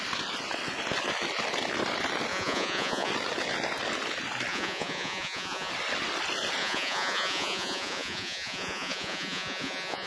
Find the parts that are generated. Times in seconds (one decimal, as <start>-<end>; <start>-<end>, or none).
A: 2.3-3.1; 4.5-5.7; 6.6-10.1